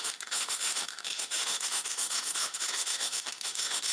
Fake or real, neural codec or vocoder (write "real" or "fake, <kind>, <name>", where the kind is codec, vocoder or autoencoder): fake, autoencoder, DAC-VAE